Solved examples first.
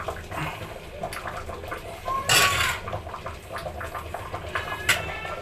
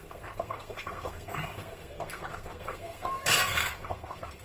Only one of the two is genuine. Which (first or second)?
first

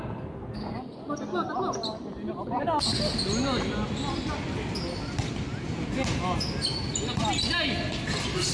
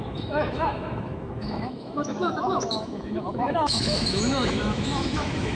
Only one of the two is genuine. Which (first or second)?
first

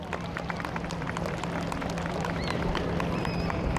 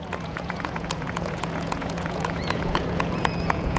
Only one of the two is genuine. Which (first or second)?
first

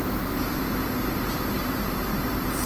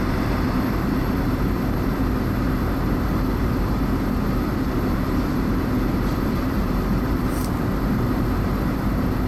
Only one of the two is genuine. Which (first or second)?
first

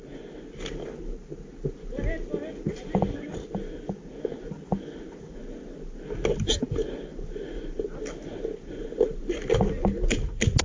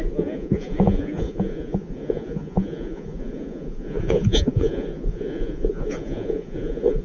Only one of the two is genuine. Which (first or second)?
first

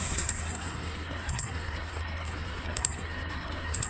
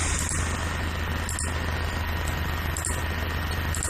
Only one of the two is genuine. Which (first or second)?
second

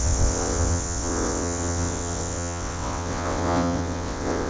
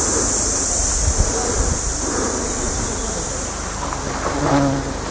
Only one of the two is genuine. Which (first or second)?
second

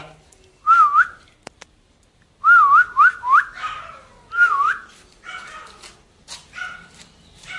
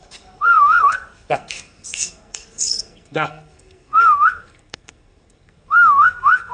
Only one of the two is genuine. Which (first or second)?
first